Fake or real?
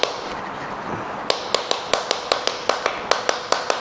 real